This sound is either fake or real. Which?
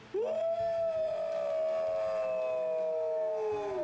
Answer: real